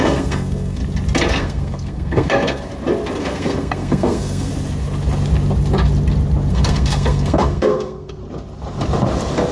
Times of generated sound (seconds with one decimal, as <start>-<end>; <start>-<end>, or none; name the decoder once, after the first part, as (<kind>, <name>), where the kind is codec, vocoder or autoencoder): 0.0-0.8 (codec, SNAC); 1.3-2.7; 3.2-4.5; 6.5-8.2